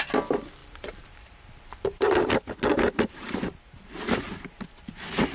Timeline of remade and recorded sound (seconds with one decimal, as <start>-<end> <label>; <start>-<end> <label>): 0.0-0.6 recorded; 0.6-2.3 remade; 2.3-2.7 recorded; 2.7-3.5 remade; 3.5-5.3 recorded